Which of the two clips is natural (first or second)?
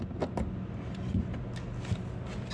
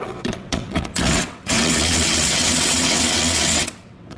first